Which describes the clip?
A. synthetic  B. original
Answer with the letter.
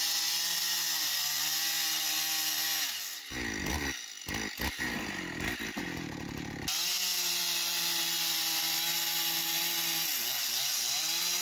B